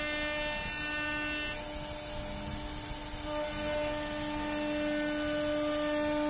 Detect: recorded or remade recorded